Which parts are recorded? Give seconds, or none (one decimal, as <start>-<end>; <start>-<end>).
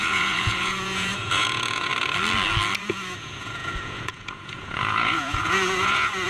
1.9-2.8